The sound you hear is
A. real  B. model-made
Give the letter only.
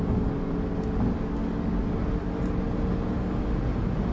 A